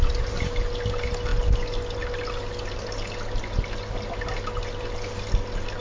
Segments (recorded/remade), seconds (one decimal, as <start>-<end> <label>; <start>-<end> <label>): 0.0-5.8 recorded